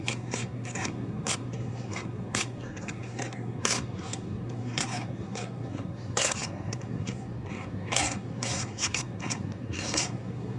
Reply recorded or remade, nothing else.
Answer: remade